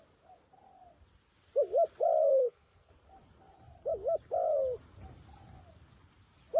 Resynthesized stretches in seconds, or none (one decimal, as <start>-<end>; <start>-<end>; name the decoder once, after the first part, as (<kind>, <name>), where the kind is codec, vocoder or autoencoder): 2.3-2.9 (codec, SNAC)